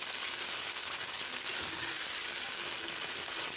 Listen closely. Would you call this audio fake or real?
real